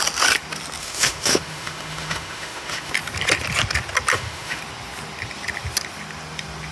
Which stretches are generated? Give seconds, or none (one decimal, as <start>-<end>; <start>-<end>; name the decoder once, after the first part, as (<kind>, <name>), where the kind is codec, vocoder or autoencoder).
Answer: 0.8-2.9 (autoencoder, DAC-VAE); 4.1-4.6